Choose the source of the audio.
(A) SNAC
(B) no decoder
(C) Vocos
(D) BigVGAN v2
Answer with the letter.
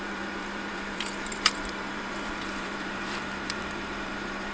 D